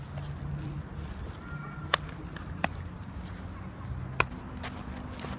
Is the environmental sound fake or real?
real